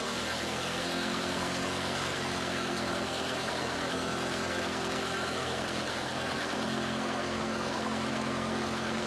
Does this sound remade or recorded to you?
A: remade